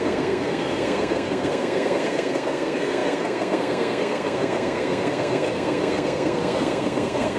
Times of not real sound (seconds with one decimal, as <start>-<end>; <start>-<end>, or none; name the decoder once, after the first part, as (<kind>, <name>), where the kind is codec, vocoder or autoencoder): 0.0-7.4 (codec, SNAC)